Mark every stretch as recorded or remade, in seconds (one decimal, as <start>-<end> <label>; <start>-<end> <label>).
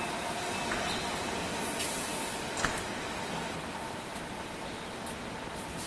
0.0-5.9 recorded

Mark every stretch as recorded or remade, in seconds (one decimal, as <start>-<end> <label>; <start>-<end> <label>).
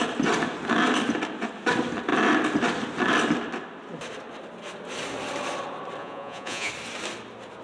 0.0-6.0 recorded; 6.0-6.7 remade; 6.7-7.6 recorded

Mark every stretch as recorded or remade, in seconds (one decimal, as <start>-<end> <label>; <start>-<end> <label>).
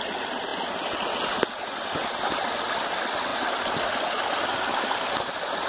0.0-5.7 recorded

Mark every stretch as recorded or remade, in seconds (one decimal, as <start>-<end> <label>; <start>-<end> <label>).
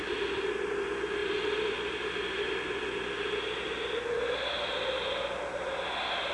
0.0-6.3 recorded